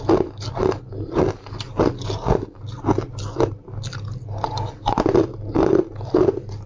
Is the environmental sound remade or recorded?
recorded